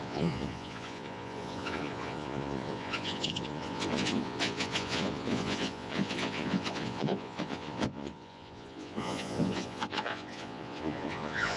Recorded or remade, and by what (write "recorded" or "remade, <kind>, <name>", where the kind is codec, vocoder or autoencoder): remade, vocoder, Vocos